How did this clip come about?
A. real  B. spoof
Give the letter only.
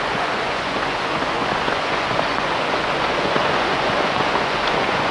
B